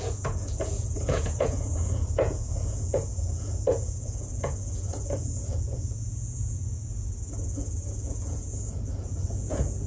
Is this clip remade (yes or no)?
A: yes